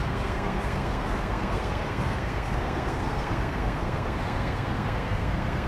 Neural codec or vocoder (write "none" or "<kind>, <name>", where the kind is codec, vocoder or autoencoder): codec, SNAC